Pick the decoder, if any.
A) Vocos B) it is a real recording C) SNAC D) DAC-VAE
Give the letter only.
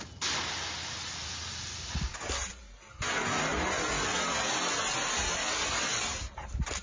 B